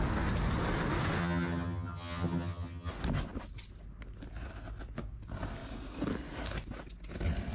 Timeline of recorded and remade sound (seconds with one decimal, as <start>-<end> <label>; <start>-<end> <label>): 0.0-1.2 recorded; 1.2-2.9 remade; 2.9-7.5 recorded